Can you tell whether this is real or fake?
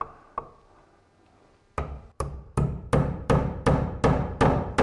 real